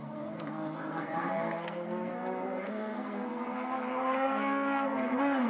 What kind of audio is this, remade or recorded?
remade